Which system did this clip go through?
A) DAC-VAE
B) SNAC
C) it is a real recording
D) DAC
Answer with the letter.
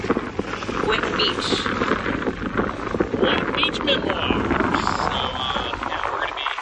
C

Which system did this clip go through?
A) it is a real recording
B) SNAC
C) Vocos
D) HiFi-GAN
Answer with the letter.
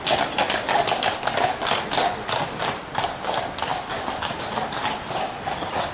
A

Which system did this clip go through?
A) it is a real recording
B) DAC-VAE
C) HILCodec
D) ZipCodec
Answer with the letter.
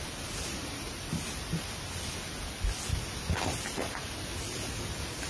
A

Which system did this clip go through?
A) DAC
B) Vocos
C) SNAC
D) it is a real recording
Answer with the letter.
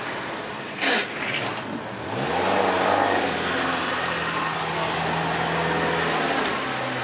D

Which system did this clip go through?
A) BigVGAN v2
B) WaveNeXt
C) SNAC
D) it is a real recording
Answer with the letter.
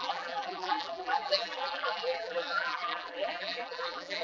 A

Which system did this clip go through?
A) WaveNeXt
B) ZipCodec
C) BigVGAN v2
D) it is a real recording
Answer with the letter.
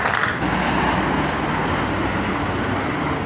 D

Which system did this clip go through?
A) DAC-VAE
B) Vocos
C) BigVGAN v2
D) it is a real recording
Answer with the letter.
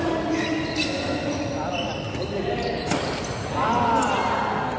D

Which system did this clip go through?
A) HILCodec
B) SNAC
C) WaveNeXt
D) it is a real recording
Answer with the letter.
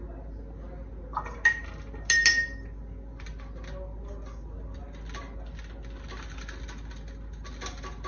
D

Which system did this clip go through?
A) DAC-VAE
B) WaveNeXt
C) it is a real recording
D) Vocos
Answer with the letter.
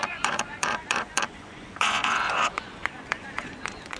D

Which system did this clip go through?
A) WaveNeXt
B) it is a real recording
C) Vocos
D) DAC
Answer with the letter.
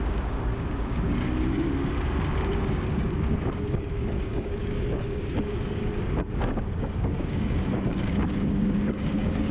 D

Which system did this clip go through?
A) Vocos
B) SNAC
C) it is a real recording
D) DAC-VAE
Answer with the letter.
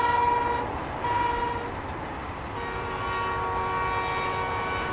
C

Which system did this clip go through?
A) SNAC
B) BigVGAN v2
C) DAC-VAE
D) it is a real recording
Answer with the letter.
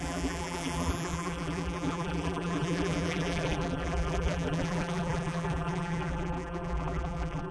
B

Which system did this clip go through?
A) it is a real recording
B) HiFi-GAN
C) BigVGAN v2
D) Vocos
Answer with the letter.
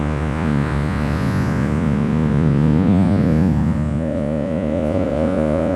D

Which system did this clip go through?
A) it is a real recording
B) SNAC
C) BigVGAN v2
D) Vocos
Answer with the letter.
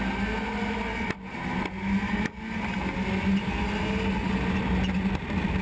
A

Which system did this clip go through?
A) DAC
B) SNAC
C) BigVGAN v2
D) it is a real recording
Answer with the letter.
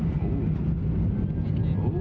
D